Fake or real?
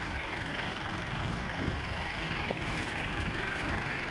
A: fake